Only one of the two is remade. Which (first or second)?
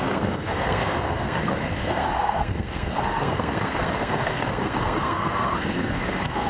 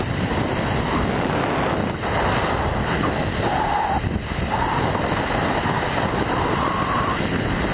first